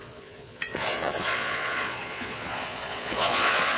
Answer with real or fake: fake